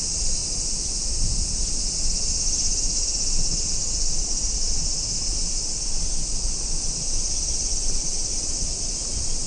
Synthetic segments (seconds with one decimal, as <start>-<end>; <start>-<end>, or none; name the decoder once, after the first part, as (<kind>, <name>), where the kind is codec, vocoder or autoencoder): none